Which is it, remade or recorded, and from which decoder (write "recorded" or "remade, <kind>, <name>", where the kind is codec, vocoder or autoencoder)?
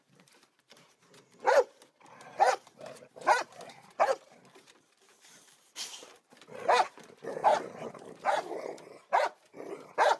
remade, vocoder, BigVGAN v2